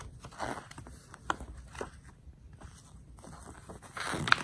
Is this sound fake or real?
real